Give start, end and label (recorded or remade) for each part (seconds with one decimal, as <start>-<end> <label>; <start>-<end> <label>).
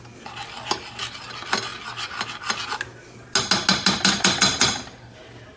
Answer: 0.0-5.6 recorded